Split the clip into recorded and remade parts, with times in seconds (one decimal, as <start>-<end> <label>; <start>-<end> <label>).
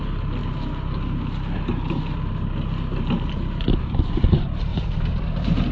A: 0.0-4.7 recorded; 4.7-5.7 remade